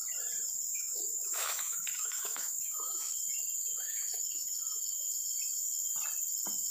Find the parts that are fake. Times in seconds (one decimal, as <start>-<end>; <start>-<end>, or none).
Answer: 0.7-3.2; 3.7-5.1